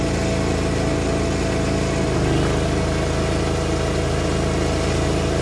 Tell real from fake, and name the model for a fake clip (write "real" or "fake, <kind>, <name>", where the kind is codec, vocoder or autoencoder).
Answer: real